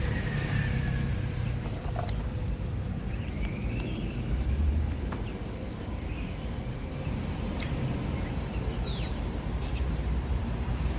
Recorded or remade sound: remade